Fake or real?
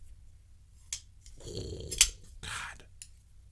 real